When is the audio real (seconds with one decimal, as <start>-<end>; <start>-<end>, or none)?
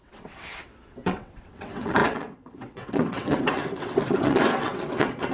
none